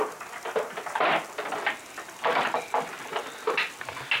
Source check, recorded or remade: recorded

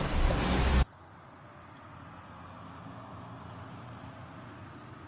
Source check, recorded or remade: recorded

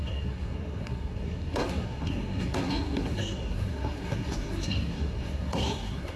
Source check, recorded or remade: remade